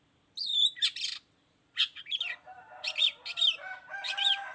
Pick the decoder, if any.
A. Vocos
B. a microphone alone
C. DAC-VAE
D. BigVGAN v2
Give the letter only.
B